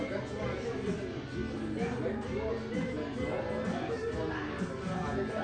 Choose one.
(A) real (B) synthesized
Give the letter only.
A